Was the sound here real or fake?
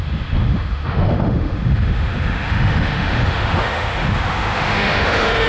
fake